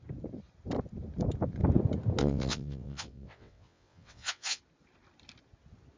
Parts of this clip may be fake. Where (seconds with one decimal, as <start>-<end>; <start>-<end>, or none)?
2.2-4.6